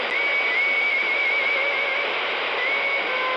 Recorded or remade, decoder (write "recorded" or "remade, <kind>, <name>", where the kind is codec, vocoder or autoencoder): recorded